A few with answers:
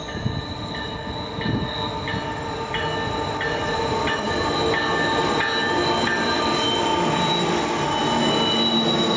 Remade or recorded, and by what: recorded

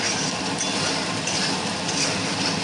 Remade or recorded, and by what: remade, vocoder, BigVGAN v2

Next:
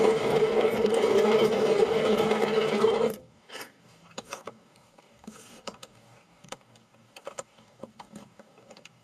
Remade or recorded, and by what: remade, codec, DAC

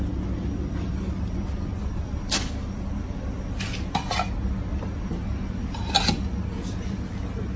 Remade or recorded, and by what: recorded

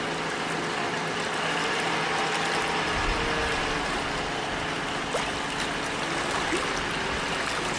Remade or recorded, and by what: recorded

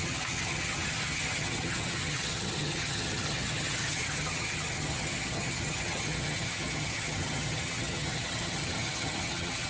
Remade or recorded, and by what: remade, vocoder, HiFi-GAN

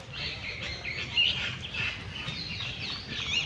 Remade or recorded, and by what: recorded